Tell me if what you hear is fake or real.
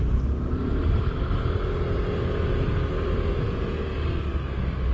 real